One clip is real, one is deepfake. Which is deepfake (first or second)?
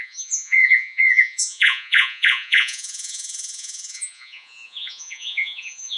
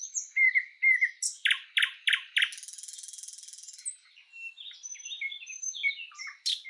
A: first